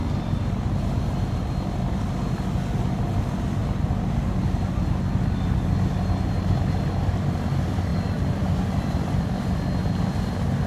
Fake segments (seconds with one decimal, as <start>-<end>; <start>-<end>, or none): none